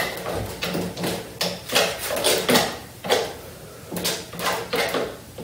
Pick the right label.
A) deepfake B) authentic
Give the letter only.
B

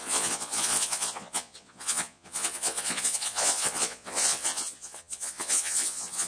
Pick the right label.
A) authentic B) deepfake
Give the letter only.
B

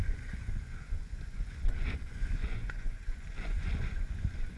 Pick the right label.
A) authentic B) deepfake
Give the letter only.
B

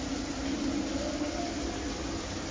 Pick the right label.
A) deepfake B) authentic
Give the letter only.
B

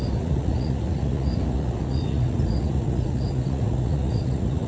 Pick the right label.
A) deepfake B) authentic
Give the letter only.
A